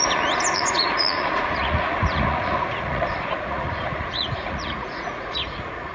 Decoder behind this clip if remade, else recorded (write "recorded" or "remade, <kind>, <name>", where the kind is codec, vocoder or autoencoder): remade, vocoder, Vocos